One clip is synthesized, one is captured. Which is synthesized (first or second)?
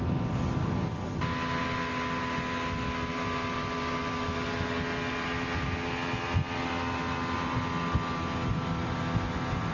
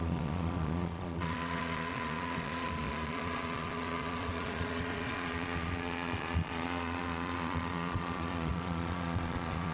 second